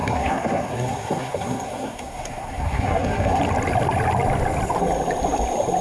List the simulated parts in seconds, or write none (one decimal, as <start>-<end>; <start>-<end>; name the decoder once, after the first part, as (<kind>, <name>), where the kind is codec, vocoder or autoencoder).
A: 0.0-3.4 (codec, SNAC)